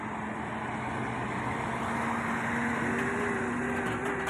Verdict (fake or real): real